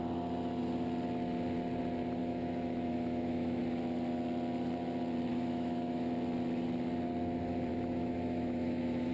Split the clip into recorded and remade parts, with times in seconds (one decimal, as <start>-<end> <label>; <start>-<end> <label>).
0.0-2.2 recorded; 2.2-3.6 remade; 3.6-5.3 recorded; 5.3-6.1 remade; 6.1-7.7 recorded; 7.7-9.1 remade